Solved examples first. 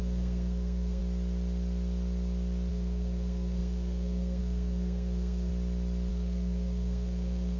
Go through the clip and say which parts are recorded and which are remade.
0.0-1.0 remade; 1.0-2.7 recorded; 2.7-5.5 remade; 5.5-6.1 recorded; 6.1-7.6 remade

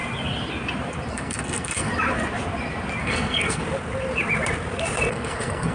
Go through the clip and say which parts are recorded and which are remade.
0.0-1.1 recorded; 1.1-1.9 remade; 1.9-3.0 recorded; 3.0-3.6 remade; 3.6-5.1 recorded; 5.1-5.7 remade

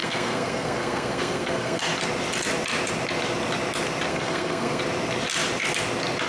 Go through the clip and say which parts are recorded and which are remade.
0.0-1.8 remade; 1.8-4.1 recorded; 4.1-4.8 remade; 4.8-6.3 recorded

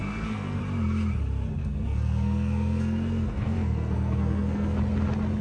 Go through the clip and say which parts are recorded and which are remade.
0.0-0.6 remade; 0.6-1.6 recorded; 1.6-4.8 remade; 4.8-5.4 recorded

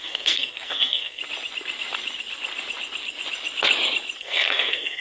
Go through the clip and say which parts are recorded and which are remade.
0.0-1.2 remade; 1.2-4.2 recorded; 4.2-5.0 remade

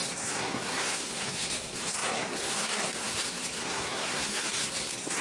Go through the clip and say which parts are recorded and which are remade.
0.0-5.2 remade